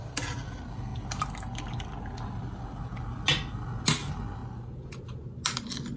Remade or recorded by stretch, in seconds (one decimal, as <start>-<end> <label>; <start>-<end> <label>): 0.0-6.0 recorded